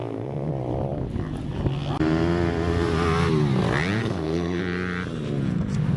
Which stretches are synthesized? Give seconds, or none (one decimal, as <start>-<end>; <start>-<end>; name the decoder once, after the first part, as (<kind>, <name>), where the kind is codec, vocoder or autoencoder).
0.0-0.5 (codec, SNAC); 4.0-4.6